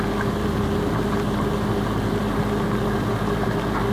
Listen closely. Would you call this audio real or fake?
real